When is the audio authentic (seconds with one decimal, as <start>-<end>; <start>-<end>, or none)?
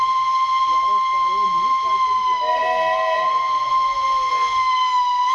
0.0-5.3